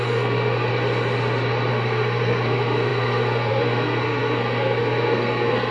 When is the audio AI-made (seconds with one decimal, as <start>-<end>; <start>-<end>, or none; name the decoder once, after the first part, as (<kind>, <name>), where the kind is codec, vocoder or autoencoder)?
0.0-0.7 (codec, SNAC); 1.7-5.7